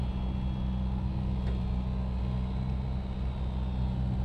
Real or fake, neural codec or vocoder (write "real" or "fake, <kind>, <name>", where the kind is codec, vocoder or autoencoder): real